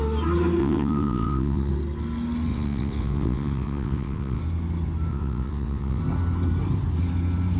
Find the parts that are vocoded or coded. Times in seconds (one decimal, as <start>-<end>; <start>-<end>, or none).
0.6-1.7; 2.5-4.4; 5.1-6.0